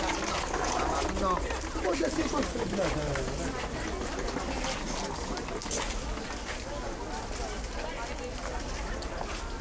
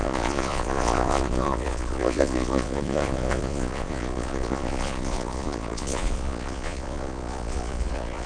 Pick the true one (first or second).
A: first